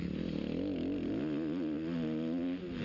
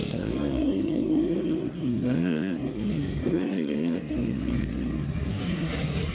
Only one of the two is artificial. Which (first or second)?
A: second